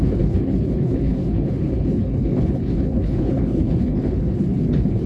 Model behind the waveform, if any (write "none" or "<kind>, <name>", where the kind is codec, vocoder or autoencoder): codec, HILCodec